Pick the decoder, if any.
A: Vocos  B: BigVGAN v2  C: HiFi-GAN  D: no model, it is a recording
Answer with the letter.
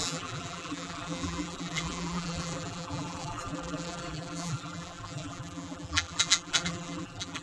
B